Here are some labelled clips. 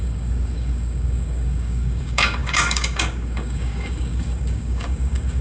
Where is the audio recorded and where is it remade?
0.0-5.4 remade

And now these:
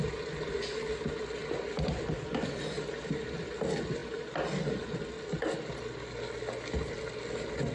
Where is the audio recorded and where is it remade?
0.0-7.7 recorded

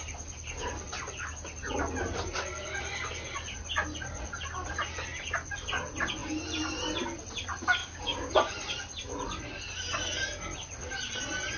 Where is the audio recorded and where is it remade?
0.0-7.8 recorded; 7.8-8.3 remade; 8.3-11.6 recorded

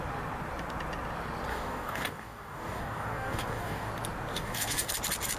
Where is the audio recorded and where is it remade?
0.0-1.5 recorded; 1.5-3.9 remade; 3.9-4.3 recorded; 4.3-4.9 remade; 4.9-5.4 recorded

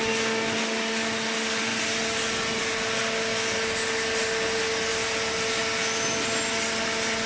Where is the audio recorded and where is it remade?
0.0-7.3 recorded

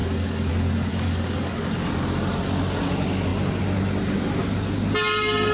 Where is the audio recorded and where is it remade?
0.0-0.5 remade; 0.5-0.9 recorded; 0.9-1.9 remade; 1.9-5.5 recorded

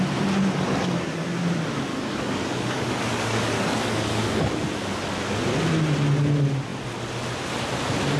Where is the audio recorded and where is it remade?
0.0-1.9 recorded; 1.9-4.5 remade; 4.5-8.2 recorded

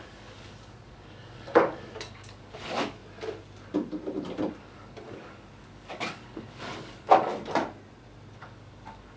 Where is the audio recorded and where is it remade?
0.0-3.0 remade; 3.0-4.6 recorded; 4.6-7.3 remade; 7.3-8.3 recorded; 8.3-9.2 remade